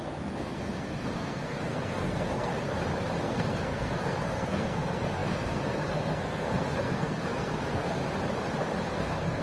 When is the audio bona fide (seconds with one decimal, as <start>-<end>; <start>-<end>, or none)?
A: 2.5-3.2; 8.0-8.8